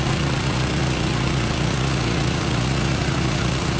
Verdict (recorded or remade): remade